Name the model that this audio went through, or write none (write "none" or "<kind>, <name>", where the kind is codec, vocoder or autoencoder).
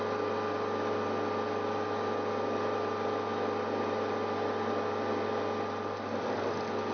none